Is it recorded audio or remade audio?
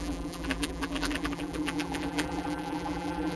remade